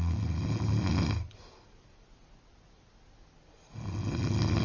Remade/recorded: recorded